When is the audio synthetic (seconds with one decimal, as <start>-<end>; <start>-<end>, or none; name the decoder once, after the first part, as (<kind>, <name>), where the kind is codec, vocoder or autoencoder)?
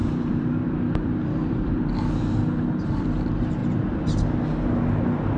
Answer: 0.0-2.0 (vocoder, BigVGAN v2); 3.6-4.1